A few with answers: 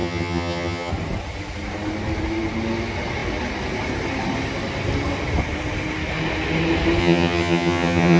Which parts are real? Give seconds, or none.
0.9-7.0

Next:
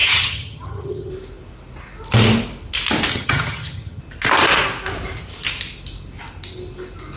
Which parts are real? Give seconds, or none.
1.1-3.1; 4.0-7.2

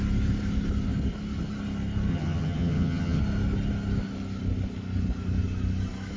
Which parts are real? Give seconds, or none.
0.0-2.1; 3.2-6.2